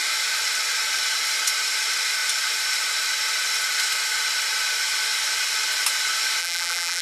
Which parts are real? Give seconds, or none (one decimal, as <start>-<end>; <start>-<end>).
0.0-6.4